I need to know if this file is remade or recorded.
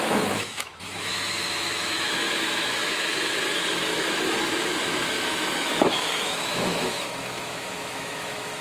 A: remade